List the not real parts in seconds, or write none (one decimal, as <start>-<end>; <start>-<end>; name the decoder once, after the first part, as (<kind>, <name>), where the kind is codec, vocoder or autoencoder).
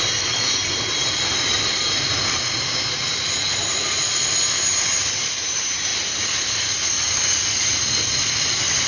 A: none